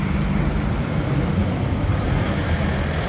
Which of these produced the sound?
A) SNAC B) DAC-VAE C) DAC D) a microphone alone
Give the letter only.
D